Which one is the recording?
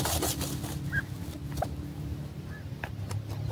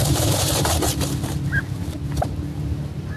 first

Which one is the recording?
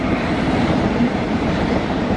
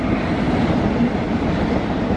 second